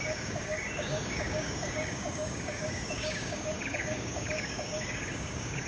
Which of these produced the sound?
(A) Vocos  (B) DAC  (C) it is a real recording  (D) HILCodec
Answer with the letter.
B